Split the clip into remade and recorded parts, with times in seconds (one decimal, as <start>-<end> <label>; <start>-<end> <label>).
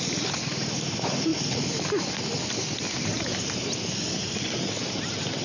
0.0-5.4 recorded